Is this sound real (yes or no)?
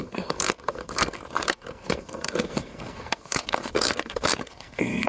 no